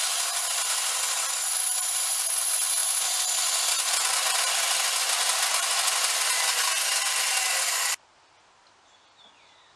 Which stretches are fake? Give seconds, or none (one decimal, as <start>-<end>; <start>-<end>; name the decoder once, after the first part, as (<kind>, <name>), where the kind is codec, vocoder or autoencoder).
none